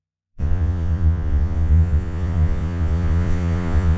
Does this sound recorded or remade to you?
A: remade